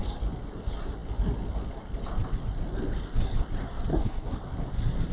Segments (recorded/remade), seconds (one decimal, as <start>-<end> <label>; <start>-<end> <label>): 0.0-3.9 recorded; 3.9-4.4 remade; 4.4-5.1 recorded